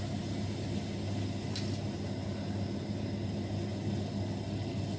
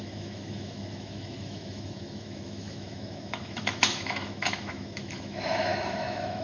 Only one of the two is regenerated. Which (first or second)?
second